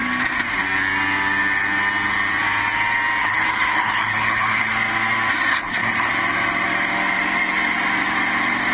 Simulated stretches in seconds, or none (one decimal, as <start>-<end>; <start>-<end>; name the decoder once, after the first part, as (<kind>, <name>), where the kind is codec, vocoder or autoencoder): 3.2-4.7 (codec, HILCodec); 5.5-6.1